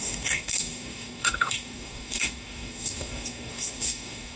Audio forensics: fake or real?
fake